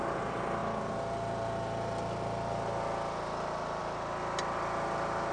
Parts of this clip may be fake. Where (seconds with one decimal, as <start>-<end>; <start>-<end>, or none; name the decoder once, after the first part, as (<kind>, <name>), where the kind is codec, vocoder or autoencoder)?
none